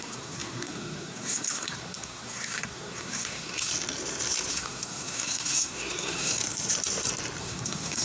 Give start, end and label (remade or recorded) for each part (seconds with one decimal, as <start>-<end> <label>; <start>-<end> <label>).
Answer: 0.0-3.7 remade; 3.7-4.5 recorded; 4.5-6.4 remade; 6.4-7.4 recorded; 7.4-8.0 remade